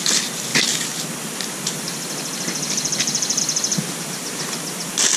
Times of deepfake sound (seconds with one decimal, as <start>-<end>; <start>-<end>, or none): none

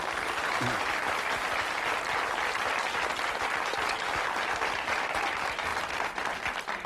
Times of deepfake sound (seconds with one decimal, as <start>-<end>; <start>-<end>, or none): none

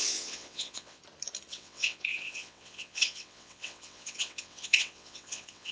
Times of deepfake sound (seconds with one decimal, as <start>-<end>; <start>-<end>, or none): 0.0-1.0; 1.5-5.7

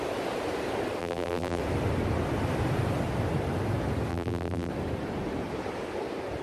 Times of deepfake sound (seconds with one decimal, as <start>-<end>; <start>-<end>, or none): 1.0-1.6; 4.1-4.7

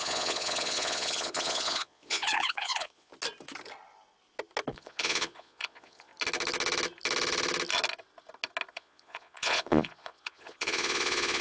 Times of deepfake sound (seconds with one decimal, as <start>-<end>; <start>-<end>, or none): 0.0-3.1; 4.7-6.1; 8.7-11.4

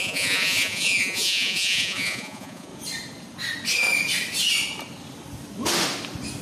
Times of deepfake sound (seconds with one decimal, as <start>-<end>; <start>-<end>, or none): 0.0-2.7

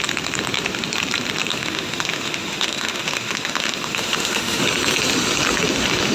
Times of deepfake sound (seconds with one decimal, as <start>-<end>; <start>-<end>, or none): 1.5-4.6

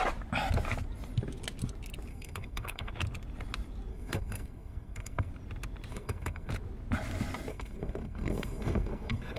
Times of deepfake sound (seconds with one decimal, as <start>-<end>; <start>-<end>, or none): 2.1-2.9; 3.9-5.3; 5.9-6.5; 7.5-9.4